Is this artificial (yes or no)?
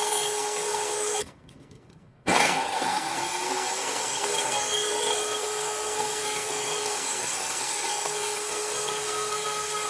yes